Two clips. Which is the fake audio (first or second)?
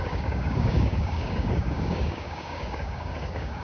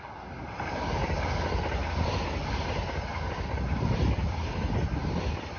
first